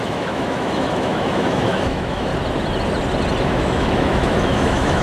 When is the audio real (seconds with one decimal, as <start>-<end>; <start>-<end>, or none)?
2.3-3.4